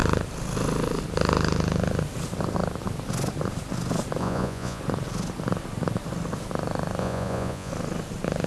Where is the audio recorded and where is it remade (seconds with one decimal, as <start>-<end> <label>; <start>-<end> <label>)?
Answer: 0.0-4.2 recorded; 4.2-4.8 remade; 4.8-7.0 recorded; 7.0-7.7 remade; 7.7-8.5 recorded